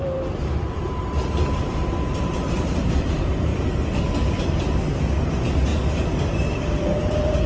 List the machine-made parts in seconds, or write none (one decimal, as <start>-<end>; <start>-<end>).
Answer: 0.0-3.5; 4.9-5.7; 7.0-7.5